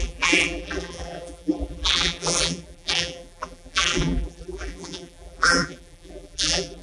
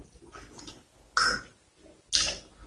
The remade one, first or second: first